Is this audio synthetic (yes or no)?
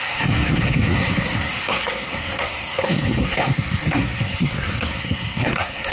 yes